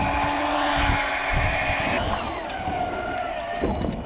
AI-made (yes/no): no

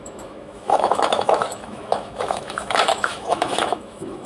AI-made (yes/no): yes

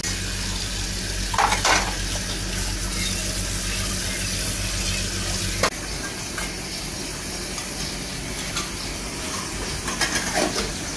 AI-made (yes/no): no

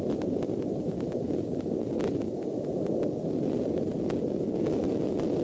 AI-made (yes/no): no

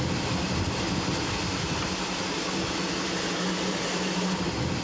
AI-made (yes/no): no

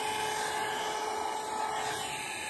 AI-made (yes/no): no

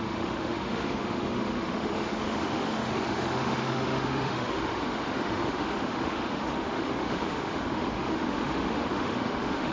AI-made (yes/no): yes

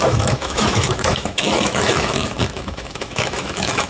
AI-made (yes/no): yes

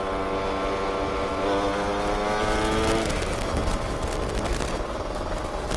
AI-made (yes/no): no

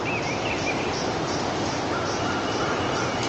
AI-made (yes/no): no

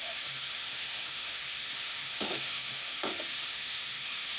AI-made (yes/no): yes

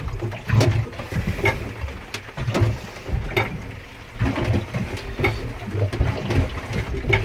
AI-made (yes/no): no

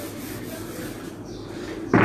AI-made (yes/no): no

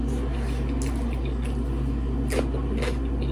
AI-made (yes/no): no